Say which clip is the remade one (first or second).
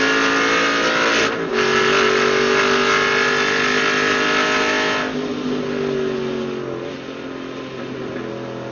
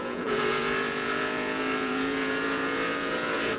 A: second